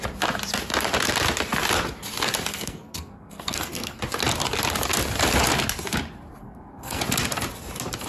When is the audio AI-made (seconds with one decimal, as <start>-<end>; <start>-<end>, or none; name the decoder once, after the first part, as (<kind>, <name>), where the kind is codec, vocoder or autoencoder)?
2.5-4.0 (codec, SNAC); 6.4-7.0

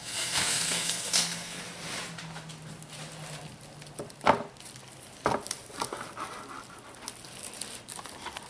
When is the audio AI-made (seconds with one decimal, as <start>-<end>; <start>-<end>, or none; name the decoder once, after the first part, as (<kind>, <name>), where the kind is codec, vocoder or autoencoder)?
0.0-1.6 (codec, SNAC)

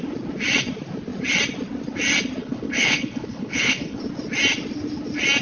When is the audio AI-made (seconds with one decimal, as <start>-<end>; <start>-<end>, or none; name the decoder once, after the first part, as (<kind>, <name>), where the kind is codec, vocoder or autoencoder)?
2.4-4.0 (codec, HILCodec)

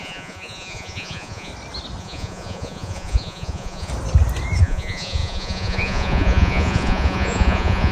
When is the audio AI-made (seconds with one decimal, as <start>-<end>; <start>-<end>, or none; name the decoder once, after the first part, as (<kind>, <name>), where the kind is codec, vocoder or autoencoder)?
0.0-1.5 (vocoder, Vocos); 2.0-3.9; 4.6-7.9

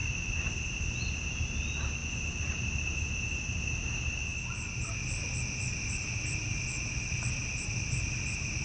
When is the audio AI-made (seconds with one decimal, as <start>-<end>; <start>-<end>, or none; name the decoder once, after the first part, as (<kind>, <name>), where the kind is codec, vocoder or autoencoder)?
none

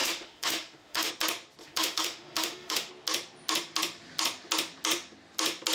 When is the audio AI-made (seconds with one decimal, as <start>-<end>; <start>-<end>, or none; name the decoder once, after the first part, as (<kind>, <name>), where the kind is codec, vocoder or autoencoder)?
0.0-1.1 (autoencoder, DAC-VAE); 1.6-2.9

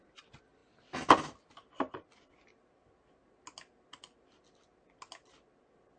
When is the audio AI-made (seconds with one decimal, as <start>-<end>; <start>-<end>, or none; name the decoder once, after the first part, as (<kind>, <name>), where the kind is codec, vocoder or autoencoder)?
none

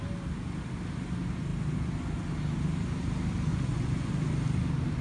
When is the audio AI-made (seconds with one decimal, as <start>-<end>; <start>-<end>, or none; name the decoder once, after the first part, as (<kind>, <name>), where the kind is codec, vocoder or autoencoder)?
3.5-4.1 (vocoder, Vocos)